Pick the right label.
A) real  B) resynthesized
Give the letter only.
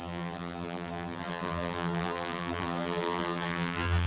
B